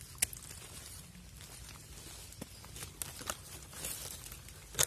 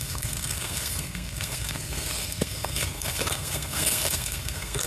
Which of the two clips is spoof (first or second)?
second